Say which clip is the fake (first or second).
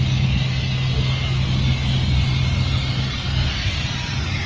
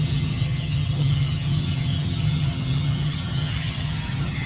second